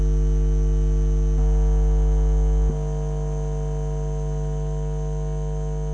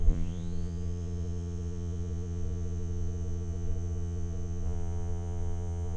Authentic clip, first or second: first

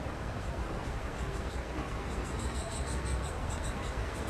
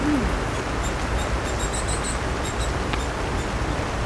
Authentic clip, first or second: second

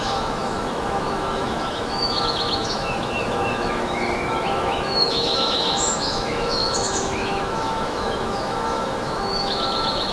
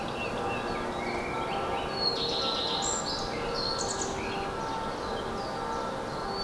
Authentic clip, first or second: second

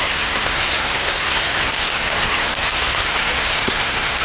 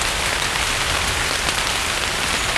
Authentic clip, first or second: second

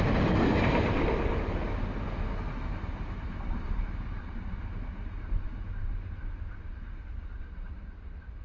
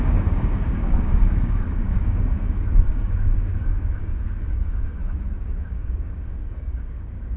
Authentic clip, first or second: first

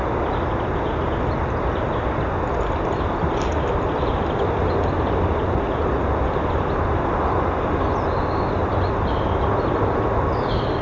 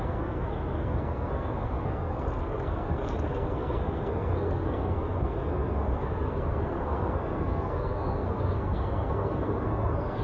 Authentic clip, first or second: first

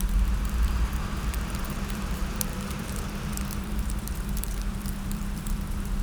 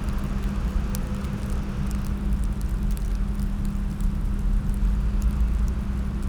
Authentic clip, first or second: second